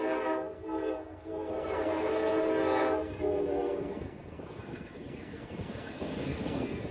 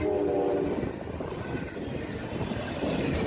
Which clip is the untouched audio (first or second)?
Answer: second